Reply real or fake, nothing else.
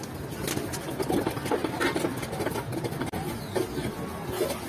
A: real